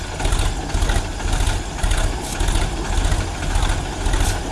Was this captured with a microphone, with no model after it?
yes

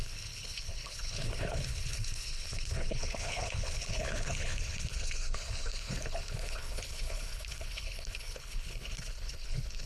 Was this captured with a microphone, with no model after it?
no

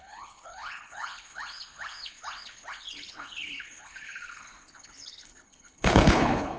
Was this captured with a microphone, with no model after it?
no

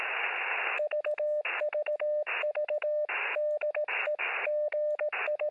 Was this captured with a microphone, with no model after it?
yes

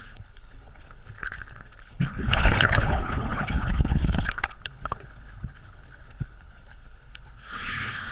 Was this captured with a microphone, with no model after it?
no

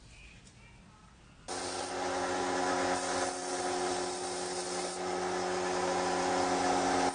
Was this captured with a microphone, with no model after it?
yes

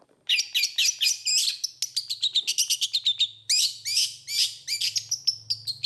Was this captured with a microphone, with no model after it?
yes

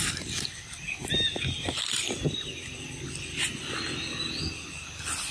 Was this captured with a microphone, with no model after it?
yes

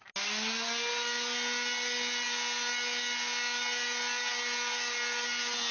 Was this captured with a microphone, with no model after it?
yes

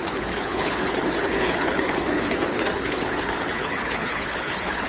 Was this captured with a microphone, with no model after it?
no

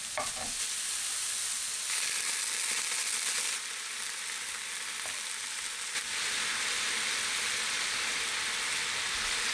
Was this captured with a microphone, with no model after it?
yes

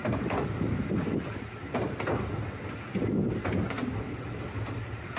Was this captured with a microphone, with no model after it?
yes